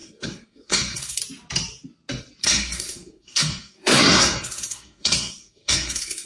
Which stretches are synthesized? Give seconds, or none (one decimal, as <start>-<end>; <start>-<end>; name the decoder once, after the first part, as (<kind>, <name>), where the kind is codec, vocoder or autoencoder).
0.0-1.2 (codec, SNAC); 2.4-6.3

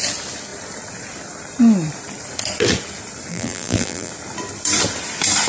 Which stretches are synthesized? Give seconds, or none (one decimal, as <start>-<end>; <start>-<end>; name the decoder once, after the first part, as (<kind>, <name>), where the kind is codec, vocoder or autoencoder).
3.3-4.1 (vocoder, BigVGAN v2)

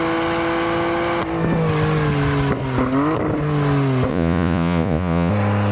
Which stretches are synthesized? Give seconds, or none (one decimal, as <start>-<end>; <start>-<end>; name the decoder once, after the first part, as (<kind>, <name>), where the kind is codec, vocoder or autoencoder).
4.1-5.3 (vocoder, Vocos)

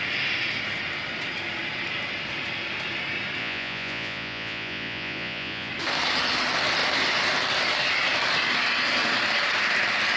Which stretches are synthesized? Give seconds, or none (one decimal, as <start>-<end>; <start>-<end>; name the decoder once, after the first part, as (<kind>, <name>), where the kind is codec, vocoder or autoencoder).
3.4-5.7 (vocoder, Vocos)

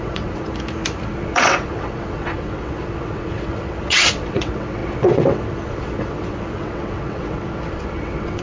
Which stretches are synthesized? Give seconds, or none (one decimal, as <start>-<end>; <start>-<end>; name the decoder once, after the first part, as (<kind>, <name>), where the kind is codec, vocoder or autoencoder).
0.0-0.5 (vocoder, WaveNeXt); 1.1-8.4

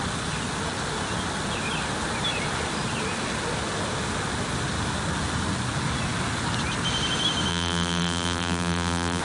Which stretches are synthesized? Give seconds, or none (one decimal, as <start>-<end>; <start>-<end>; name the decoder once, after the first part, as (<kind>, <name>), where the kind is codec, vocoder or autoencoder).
7.5-9.2 (vocoder, BigVGAN v2)

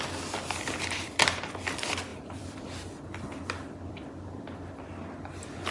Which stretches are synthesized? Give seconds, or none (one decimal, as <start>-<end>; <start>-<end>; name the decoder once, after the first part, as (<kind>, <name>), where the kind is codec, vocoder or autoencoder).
2.1-4.9 (vocoder, BigVGAN v2)